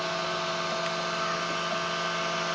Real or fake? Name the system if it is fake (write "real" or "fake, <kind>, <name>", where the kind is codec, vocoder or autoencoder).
real